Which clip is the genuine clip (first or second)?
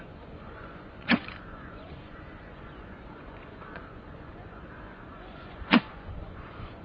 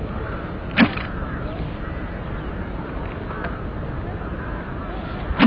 second